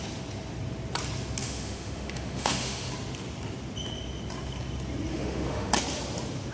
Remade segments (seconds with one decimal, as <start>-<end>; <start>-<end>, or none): 1.4-2.9; 5.1-5.7

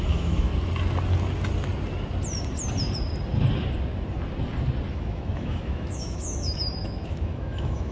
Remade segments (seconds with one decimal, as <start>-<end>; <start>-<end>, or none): 0.0-0.5; 4.9-7.9

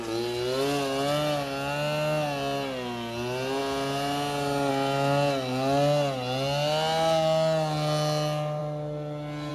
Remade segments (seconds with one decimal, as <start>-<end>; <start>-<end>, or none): none

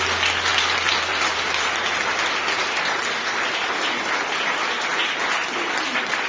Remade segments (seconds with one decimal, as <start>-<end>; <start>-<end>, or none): none